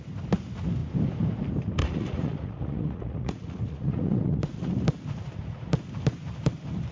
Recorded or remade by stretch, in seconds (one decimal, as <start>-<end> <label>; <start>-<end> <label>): 0.0-1.8 recorded; 1.8-4.7 remade; 4.7-6.9 recorded